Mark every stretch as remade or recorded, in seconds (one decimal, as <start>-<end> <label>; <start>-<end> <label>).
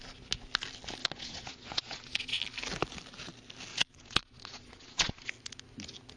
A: 0.0-1.0 recorded; 1.0-2.4 remade; 2.4-3.7 recorded; 3.7-5.3 remade; 5.3-6.2 recorded